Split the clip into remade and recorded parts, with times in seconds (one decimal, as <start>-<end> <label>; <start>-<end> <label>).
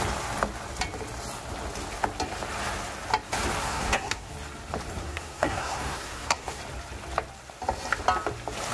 0.0-3.6 recorded; 3.6-4.3 remade; 4.3-5.0 recorded; 5.0-6.6 remade; 6.6-8.7 recorded